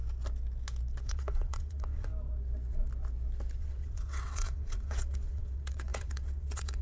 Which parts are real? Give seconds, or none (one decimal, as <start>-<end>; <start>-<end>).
0.0-1.0; 2.1-3.6

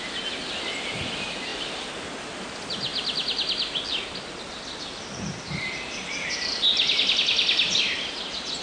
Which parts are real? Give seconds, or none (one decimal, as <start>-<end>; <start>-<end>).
0.0-8.6

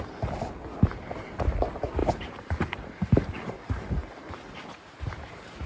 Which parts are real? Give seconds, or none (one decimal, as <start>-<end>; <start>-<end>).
0.0-2.0

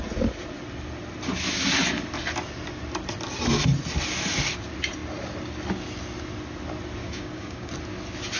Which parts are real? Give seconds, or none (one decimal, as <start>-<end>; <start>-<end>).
0.0-7.0; 7.7-8.4

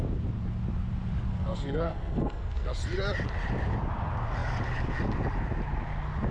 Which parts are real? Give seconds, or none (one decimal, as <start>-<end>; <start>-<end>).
0.0-1.3; 2.7-6.3

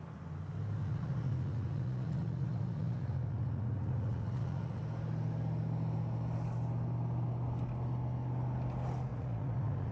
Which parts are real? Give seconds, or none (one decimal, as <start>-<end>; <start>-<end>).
0.0-0.8; 4.8-9.1